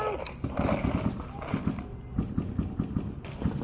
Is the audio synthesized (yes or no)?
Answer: no